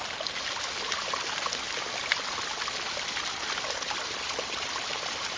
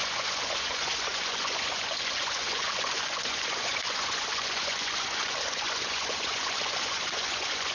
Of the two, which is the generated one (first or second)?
second